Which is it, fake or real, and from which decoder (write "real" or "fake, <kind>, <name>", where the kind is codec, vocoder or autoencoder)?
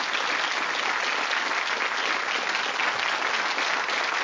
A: real